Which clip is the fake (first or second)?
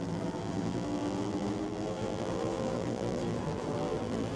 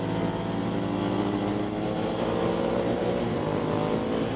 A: first